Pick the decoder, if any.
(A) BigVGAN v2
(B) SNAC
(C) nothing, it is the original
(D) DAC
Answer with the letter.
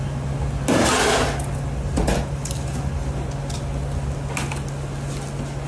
C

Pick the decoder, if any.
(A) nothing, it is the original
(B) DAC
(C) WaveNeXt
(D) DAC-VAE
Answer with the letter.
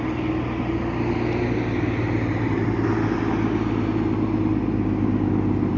A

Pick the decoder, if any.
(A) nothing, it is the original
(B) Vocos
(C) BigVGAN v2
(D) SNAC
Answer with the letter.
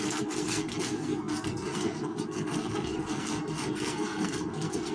D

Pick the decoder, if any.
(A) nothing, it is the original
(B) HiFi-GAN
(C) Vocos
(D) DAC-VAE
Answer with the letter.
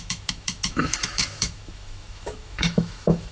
D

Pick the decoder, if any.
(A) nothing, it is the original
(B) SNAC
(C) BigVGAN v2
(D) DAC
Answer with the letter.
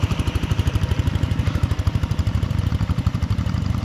C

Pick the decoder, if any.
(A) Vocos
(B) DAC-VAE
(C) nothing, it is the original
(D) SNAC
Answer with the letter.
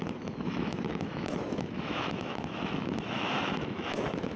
B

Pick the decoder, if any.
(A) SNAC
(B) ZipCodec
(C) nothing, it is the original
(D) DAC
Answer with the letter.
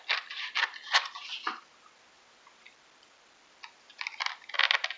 C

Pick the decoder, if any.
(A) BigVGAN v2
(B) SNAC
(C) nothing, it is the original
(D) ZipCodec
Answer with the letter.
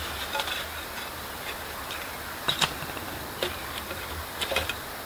C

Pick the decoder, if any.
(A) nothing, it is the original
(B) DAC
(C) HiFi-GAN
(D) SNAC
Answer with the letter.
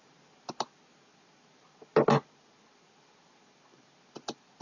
A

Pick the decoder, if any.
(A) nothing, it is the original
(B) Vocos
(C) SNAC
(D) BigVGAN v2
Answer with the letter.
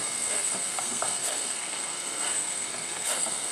C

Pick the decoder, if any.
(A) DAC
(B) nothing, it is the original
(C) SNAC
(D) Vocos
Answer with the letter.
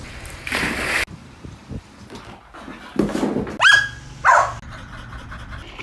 B